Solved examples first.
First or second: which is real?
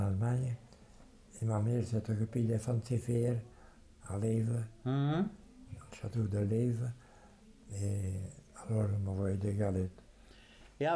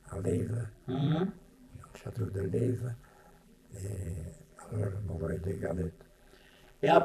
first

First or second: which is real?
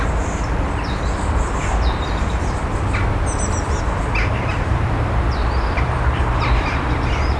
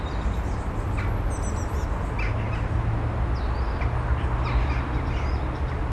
second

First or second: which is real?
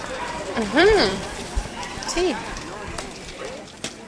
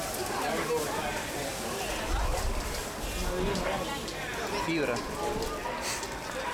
second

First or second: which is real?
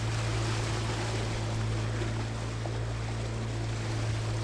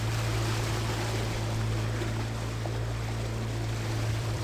first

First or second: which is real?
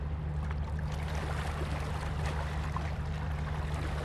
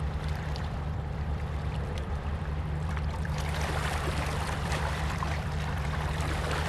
first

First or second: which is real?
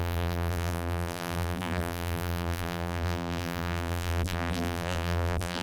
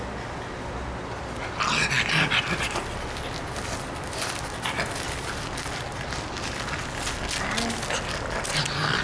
second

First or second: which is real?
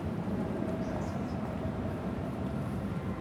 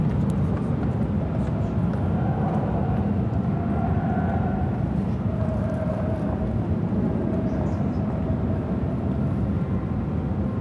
second